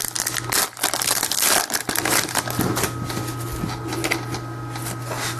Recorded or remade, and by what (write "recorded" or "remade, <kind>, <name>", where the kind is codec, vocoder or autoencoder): recorded